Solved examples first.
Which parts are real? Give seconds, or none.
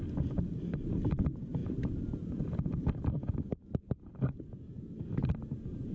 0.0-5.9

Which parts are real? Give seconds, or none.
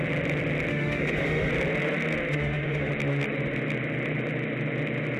0.0-0.7; 1.5-2.3; 2.9-5.2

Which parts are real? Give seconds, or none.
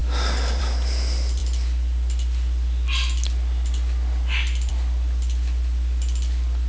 0.0-6.7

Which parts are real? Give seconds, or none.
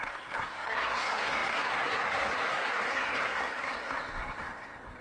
none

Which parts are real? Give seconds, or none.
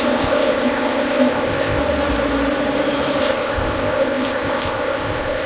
1.8-3.2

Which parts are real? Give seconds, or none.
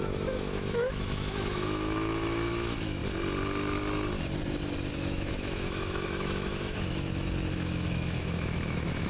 3.0-4.9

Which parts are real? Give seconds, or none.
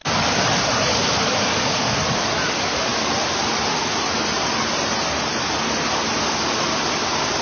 0.0-7.4